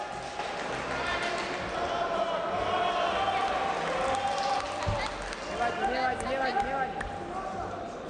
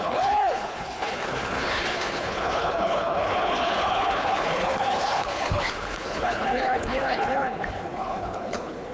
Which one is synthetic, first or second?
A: second